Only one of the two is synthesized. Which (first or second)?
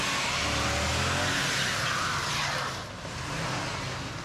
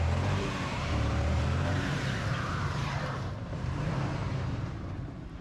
second